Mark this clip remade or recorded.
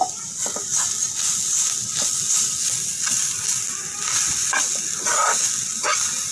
recorded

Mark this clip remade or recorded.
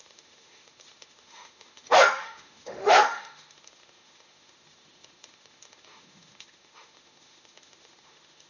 remade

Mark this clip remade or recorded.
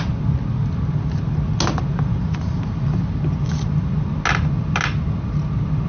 recorded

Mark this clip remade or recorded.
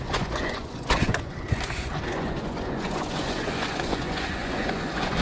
remade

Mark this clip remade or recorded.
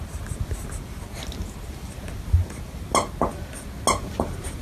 recorded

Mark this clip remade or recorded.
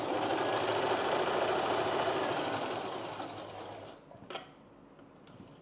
recorded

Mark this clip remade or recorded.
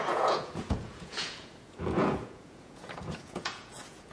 remade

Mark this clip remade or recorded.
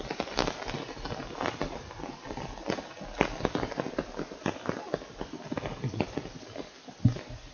recorded